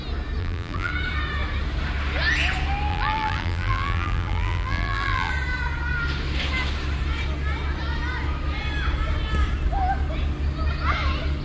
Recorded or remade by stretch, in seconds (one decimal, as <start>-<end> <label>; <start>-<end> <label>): 0.0-0.4 recorded; 0.4-0.9 remade; 0.9-2.9 recorded; 2.9-5.3 remade; 5.3-11.4 recorded